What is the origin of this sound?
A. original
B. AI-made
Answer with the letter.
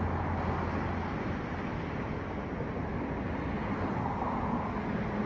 A